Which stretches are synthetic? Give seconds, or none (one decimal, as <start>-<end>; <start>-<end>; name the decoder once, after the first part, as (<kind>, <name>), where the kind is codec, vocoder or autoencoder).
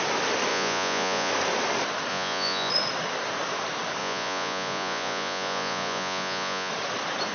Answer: 0.5-1.3 (vocoder, Vocos); 2.1-2.7; 4.0-6.7